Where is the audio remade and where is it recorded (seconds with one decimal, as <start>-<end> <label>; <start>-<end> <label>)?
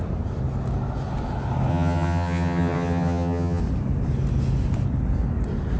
0.0-1.7 recorded; 1.7-3.6 remade; 3.6-5.8 recorded